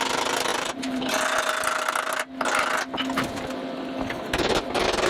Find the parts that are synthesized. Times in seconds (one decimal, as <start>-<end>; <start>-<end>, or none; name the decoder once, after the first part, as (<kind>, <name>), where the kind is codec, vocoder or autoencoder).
0.5-1.1 (vocoder, BigVGAN v2)